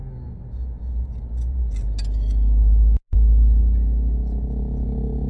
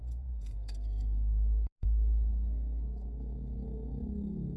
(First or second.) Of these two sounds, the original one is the first